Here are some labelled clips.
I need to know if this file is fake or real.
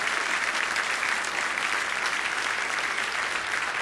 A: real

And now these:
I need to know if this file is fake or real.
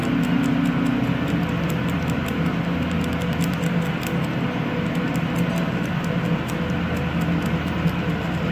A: real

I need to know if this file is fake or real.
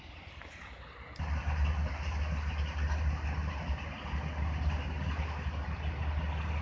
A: real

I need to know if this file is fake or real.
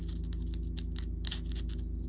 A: real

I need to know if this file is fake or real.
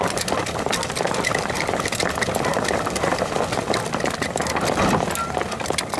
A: real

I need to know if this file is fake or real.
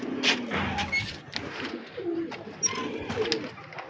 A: real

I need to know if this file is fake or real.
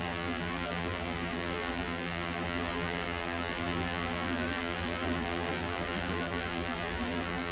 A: fake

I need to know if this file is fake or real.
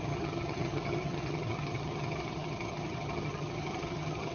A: fake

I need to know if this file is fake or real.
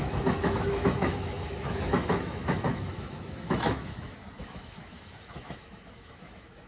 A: fake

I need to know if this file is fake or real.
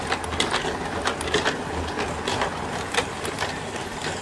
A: real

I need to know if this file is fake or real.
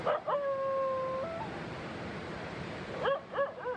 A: real